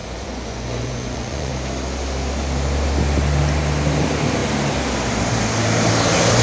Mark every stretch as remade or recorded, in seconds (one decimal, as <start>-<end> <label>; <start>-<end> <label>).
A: 0.0-1.5 remade; 1.5-6.4 recorded